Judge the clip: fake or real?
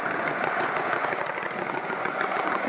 fake